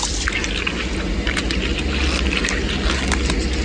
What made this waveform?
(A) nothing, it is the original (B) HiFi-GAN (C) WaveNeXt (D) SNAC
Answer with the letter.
A